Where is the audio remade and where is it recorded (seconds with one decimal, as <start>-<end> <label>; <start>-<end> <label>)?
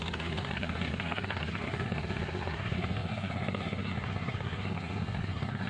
0.0-5.7 remade